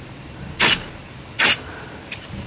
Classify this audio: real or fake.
real